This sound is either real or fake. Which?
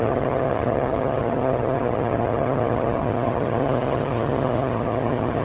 fake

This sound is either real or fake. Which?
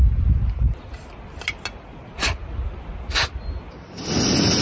real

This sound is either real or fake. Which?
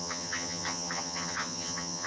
fake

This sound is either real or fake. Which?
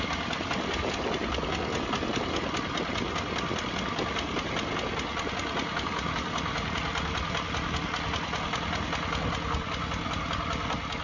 real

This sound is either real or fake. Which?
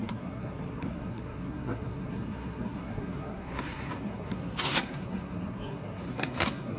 fake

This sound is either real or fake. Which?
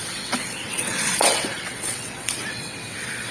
fake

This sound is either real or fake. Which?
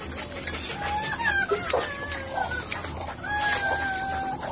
real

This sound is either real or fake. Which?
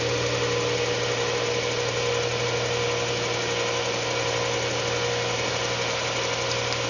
real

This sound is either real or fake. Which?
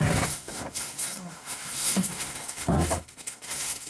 fake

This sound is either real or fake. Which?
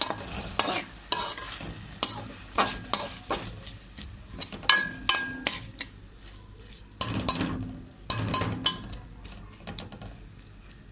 real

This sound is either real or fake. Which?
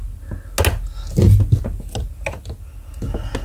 real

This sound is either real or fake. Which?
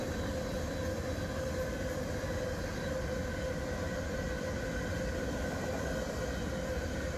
real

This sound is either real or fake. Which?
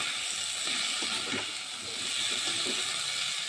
real